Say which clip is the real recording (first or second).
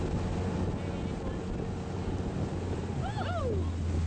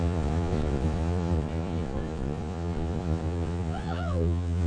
first